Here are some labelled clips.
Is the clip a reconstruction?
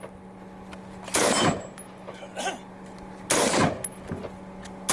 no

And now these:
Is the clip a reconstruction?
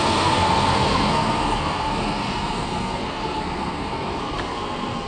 yes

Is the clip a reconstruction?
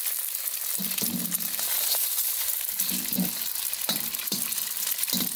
no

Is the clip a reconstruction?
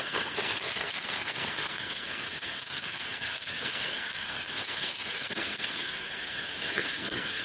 yes